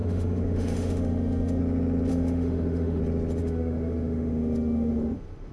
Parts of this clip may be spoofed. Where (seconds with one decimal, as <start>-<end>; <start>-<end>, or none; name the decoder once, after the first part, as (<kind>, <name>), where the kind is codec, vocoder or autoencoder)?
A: 0.0-1.6 (autoencoder, DAC-VAE); 2.1-3.0; 3.4-5.5